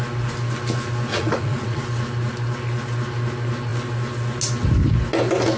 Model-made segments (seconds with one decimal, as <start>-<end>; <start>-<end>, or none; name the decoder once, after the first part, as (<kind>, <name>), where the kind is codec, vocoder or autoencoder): 1.1-1.8 (vocoder, Vocos)